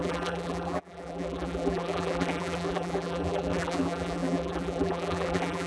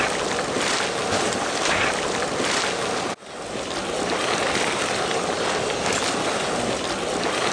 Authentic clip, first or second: second